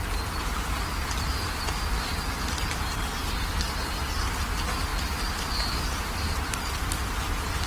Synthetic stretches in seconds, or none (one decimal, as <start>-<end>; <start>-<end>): none